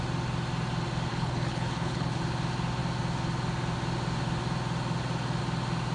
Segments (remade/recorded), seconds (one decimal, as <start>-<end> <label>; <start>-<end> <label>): 0.0-1.1 recorded; 1.1-2.2 remade; 2.2-5.9 recorded